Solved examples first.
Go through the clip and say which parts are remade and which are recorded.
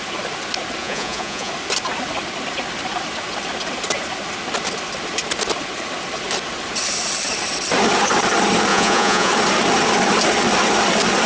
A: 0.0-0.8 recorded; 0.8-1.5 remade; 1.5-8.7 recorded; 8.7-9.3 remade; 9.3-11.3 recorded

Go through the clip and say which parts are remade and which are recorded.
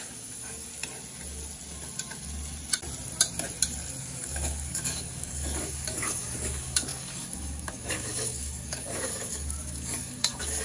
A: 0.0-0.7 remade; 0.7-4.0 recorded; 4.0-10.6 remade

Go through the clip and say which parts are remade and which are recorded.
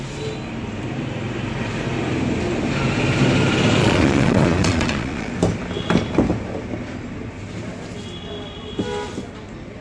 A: 0.0-3.8 recorded; 3.8-5.3 remade; 5.3-9.8 recorded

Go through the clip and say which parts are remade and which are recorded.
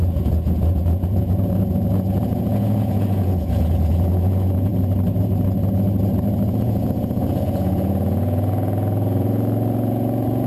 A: 0.0-4.7 remade; 4.7-6.5 recorded; 6.5-10.5 remade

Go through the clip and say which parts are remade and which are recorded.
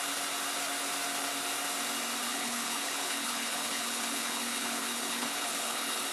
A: 0.0-2.3 recorded; 2.3-6.1 remade